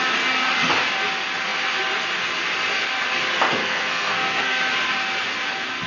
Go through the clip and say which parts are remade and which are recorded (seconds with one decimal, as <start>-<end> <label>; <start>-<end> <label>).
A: 0.0-3.6 recorded; 3.6-4.6 remade; 4.6-5.9 recorded

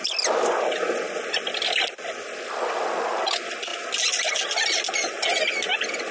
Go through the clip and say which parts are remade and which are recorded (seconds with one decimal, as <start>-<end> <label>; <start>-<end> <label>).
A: 0.0-6.1 recorded

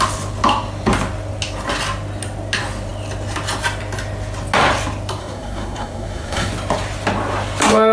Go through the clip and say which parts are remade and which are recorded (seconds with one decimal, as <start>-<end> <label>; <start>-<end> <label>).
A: 0.0-5.2 recorded; 5.2-6.5 remade; 6.5-7.9 recorded

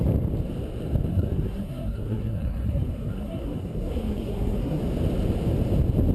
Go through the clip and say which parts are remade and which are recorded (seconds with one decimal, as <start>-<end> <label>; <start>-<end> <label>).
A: 0.0-1.1 recorded; 1.1-4.8 remade; 4.8-6.1 recorded

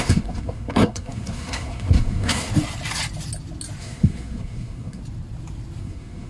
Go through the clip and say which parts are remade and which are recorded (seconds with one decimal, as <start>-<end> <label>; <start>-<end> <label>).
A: 0.0-2.5 remade; 2.5-3.8 recorded; 3.8-5.0 remade; 5.0-5.8 recorded; 5.8-6.3 remade

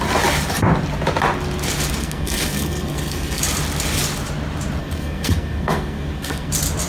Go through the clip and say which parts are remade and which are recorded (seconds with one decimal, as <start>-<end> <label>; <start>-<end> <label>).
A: 0.0-2.0 recorded; 2.0-3.4 remade; 3.4-4.8 recorded; 4.8-6.5 remade; 6.5-6.9 recorded